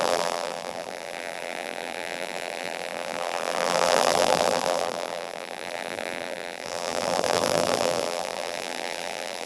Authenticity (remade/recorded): remade